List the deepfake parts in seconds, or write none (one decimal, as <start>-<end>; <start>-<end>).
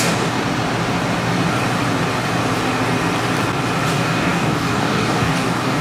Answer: 0.0-0.4; 3.9-5.8